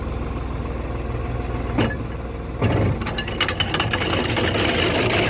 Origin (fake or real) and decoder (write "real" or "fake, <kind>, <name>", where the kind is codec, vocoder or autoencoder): real